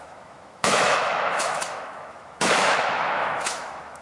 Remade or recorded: remade